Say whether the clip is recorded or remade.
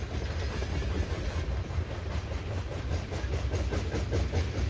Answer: recorded